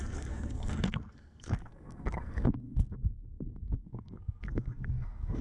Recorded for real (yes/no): no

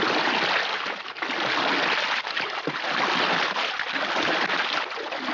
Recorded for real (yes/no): yes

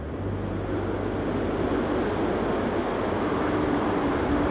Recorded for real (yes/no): yes